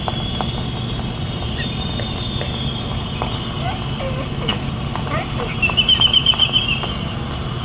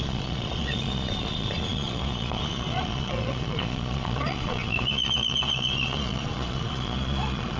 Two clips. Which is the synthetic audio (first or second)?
second